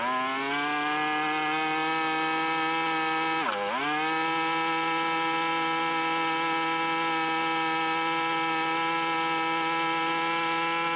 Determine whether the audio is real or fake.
real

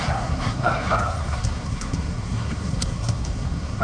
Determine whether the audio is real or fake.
fake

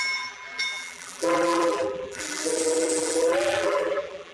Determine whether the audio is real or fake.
fake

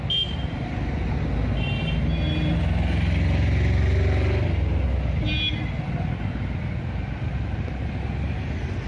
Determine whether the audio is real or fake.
real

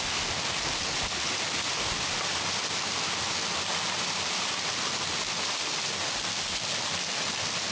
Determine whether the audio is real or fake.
real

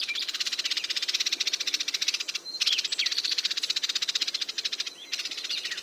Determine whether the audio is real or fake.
fake